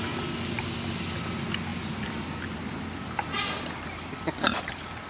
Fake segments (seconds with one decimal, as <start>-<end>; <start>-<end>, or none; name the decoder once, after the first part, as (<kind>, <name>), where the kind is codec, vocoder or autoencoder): none